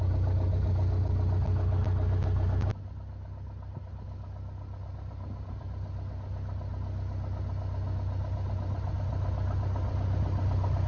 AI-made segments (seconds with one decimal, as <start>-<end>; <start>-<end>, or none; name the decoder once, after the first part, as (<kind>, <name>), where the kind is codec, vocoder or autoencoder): none